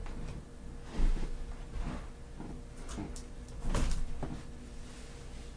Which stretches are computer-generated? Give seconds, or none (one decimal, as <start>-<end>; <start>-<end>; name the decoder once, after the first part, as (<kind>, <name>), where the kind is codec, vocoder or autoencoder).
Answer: none